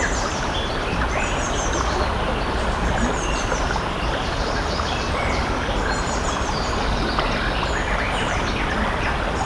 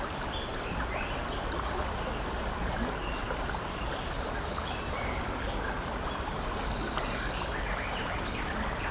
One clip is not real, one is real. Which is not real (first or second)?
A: first